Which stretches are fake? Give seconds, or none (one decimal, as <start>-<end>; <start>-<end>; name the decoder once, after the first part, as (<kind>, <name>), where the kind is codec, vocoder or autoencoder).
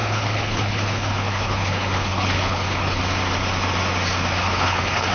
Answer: 0.0-3.0 (codec, HILCodec); 4.4-5.1